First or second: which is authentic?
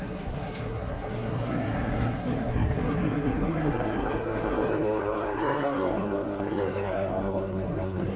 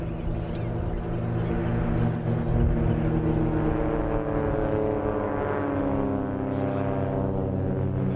second